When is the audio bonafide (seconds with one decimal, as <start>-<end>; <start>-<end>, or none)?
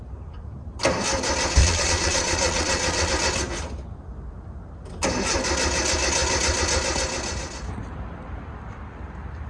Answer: 0.0-1.6; 3.1-9.5